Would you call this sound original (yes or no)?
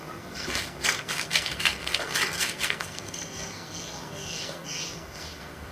no